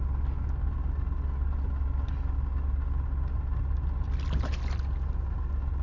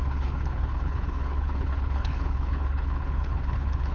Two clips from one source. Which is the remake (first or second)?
second